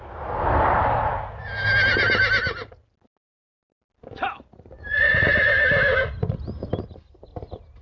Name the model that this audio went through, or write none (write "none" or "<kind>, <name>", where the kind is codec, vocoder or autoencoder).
none